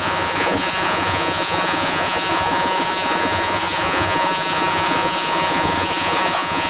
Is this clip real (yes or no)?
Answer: no